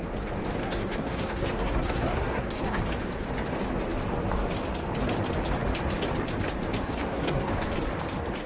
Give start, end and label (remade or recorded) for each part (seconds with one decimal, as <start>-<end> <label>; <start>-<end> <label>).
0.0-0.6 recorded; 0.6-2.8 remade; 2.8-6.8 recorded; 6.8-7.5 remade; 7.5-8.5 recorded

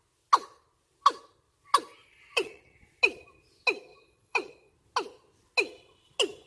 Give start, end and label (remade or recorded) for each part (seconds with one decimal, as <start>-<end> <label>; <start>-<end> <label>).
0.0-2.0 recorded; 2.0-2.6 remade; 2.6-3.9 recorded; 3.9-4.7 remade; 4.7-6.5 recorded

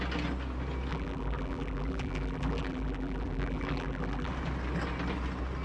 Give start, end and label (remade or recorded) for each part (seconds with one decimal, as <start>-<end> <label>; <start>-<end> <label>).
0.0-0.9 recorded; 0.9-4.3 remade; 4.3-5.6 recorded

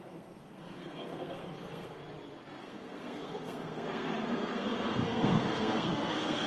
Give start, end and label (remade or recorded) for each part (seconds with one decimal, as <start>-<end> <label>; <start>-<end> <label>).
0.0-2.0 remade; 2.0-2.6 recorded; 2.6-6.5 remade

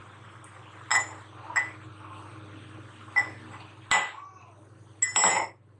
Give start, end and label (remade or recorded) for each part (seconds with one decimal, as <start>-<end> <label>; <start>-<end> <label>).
0.0-5.8 recorded

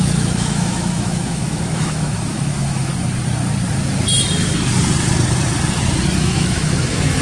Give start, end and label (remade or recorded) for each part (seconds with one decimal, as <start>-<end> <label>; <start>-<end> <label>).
0.0-2.9 remade; 2.9-6.2 recorded; 6.2-7.2 remade

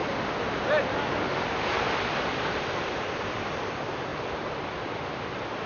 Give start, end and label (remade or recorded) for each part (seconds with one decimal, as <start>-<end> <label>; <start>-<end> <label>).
0.0-1.3 recorded; 1.3-3.6 remade; 3.6-5.7 recorded

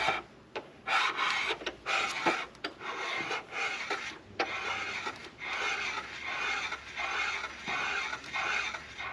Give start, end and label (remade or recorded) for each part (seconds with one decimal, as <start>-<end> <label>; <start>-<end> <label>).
0.0-9.1 recorded